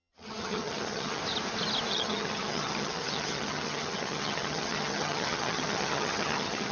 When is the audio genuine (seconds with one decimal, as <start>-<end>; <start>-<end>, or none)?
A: 1.2-1.9